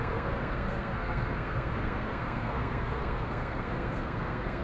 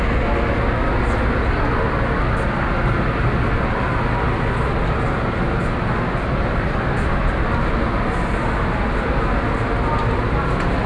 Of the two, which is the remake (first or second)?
first